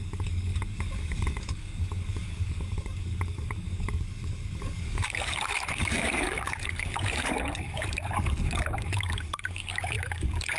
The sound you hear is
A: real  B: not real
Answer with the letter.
B